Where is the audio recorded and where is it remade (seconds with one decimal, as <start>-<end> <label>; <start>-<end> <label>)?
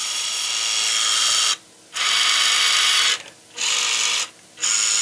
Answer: 0.0-0.5 remade; 0.5-5.0 recorded